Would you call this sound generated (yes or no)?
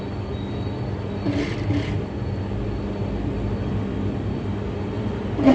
no